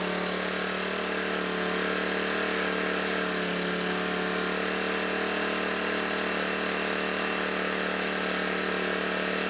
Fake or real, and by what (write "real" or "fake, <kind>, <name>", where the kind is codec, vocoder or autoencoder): real